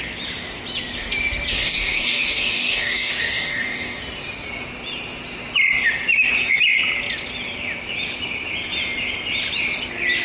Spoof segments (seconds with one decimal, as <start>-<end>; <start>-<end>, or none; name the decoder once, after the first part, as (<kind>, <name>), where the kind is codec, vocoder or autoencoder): 1.5-4.0 (codec, DAC)

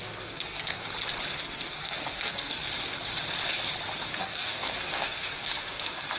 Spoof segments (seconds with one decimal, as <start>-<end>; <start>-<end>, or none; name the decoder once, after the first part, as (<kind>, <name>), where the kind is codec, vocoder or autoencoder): 0.0-0.8 (codec, SNAC); 1.4-2.6; 4.1-6.2

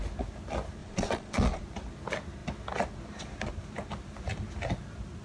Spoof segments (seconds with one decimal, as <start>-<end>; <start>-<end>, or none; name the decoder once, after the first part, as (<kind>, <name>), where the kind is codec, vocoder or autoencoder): 0.8-1.6 (vocoder, Vocos)

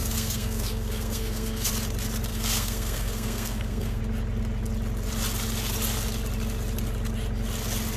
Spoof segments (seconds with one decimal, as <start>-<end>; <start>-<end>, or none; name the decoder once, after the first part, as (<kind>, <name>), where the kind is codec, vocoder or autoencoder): 0.0-1.7 (codec, SNAC); 2.3-4.0

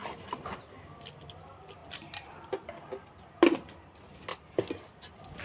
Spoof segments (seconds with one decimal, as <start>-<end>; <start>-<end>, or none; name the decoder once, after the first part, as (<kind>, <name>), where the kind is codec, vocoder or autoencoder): none

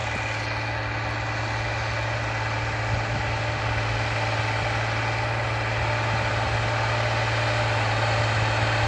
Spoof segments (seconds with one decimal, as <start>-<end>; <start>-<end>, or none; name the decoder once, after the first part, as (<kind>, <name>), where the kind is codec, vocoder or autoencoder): none